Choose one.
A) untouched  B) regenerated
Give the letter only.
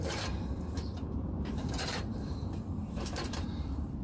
B